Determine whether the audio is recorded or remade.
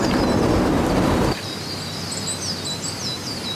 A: recorded